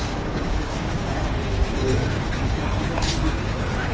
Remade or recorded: remade